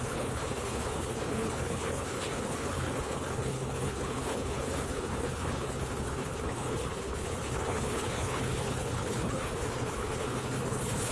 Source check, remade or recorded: remade